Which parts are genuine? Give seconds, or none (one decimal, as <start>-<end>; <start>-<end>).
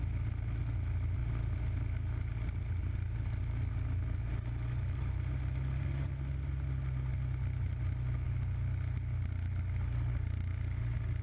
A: 0.0-11.2